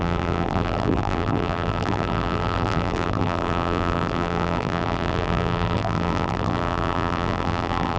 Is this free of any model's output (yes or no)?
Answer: no